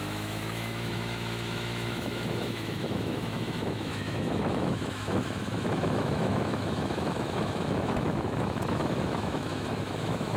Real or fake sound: fake